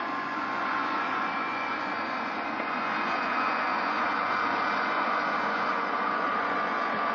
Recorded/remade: remade